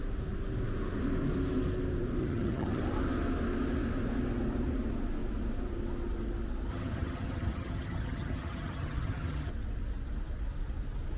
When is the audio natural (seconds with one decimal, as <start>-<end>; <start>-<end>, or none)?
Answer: 0.0-2.2; 2.8-6.7; 9.5-11.2